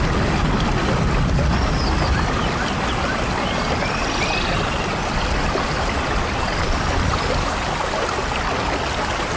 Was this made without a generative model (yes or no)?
yes